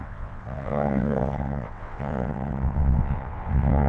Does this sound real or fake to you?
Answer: fake